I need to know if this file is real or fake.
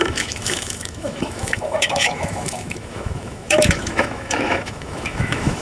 fake